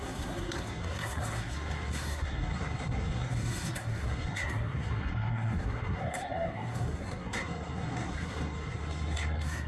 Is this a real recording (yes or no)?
no